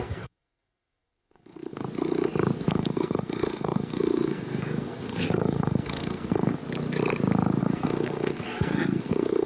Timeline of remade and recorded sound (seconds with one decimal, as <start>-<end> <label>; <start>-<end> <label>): 0.0-1.8 remade; 1.8-2.7 recorded; 2.7-6.6 remade; 6.6-7.6 recorded; 7.6-9.5 remade